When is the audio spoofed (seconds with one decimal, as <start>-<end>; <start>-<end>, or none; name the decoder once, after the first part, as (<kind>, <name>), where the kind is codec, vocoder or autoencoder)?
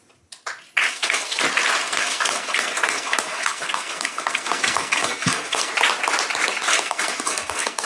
0.9-1.4 (codec, SNAC); 1.8-5.7; 6.7-7.9